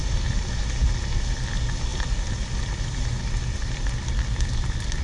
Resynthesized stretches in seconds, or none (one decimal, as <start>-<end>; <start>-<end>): none